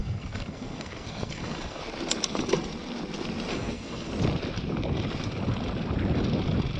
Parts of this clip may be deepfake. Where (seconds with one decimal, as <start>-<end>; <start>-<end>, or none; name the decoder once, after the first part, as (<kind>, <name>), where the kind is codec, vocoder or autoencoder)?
0.0-1.8 (codec, SNAC); 3.5-4.1